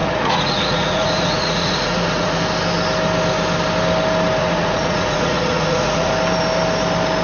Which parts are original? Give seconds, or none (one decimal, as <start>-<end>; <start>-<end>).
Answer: 2.4-4.4; 6.1-7.2

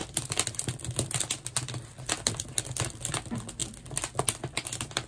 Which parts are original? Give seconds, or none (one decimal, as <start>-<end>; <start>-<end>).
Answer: 0.0-5.1

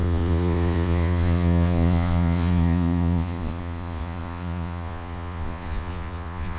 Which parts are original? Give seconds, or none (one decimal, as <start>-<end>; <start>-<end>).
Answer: none